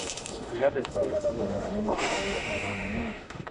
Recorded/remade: remade